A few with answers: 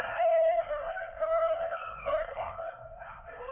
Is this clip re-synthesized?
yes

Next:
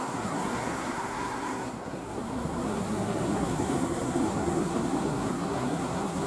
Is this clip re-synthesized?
yes